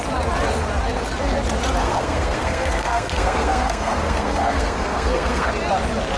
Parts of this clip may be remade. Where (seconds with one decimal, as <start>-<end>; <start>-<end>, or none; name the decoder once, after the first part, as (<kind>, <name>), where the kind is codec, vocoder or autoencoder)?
1.8-5.5 (codec, SNAC)